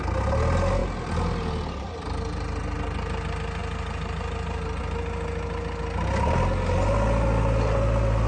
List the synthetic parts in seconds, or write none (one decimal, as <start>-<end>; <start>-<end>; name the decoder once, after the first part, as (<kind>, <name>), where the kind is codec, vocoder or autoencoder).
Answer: none